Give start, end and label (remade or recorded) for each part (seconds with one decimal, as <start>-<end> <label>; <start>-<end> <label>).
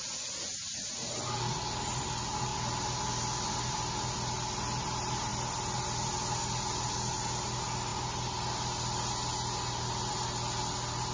0.0-11.1 recorded